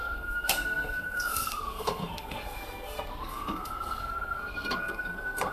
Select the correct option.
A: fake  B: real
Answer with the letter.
A